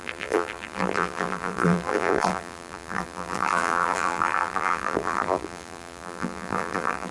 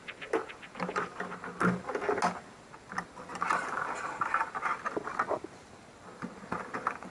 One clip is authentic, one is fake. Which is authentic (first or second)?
second